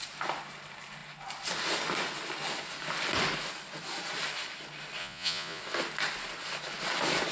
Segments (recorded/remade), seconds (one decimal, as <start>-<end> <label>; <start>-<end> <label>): 0.0-5.0 recorded; 5.0-5.6 remade; 5.6-7.3 recorded